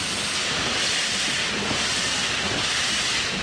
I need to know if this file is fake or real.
real